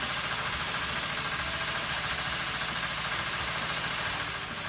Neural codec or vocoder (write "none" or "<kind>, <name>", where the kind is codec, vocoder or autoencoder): none